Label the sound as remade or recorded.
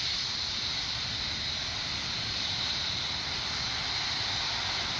recorded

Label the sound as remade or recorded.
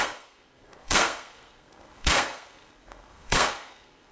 remade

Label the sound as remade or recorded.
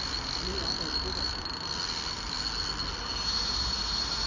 recorded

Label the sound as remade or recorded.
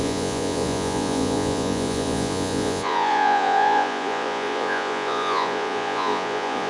remade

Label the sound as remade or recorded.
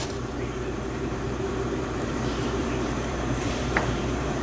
remade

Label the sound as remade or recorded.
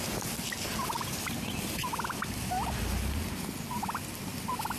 recorded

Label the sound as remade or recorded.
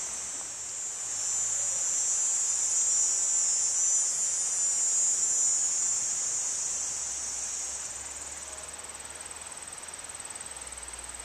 recorded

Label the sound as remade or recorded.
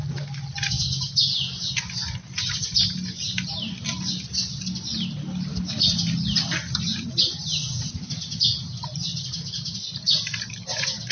recorded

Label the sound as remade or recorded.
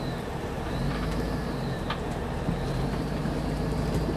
remade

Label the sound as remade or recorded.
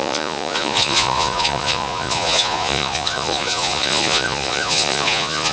remade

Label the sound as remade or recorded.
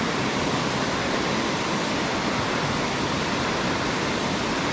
recorded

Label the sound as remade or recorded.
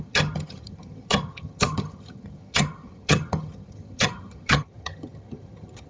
remade